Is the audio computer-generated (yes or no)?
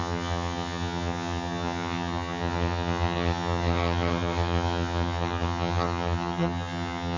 yes